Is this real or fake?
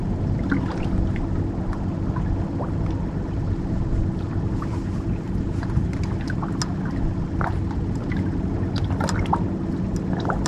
real